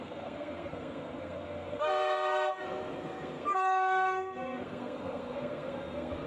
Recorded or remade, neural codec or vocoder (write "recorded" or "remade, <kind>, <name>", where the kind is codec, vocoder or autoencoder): remade, codec, SNAC